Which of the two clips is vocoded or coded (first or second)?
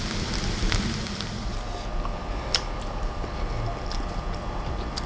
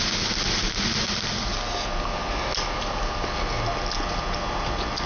first